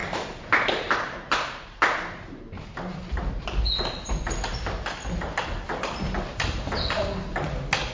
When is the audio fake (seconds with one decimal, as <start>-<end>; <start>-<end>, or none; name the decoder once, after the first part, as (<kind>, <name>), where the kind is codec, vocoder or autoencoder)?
none